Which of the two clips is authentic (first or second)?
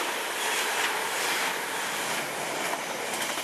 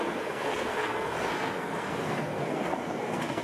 first